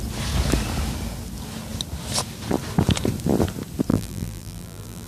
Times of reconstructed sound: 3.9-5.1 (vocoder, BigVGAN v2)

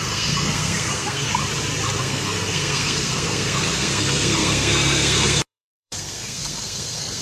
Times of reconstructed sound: 0.0-1.3 (codec, SNAC); 2.0-7.2

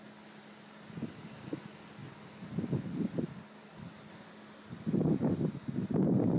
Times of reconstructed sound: none

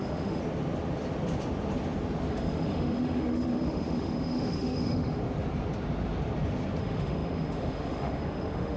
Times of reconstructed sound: 0.0-0.4 (autoencoder, DAC-VAE); 2.3-5.2; 6.8-8.8

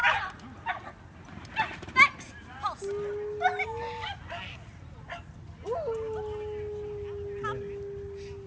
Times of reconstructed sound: none